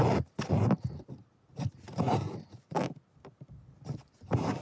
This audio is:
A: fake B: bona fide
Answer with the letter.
B